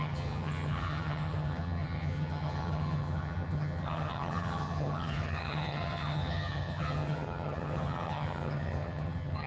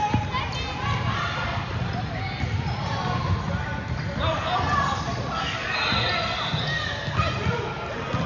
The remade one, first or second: first